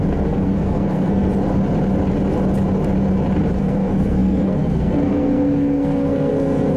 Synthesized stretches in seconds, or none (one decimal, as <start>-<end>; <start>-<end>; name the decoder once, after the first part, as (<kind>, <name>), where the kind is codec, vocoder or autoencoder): 0.0-1.3 (codec, SNAC); 3.6-6.8